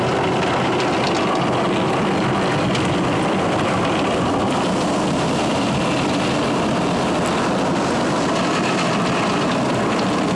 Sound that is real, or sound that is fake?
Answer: real